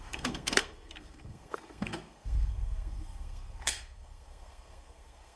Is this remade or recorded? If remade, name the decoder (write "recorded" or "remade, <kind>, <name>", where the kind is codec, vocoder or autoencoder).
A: remade, codec, SNAC